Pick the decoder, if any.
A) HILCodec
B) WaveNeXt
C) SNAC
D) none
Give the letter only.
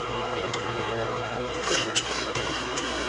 C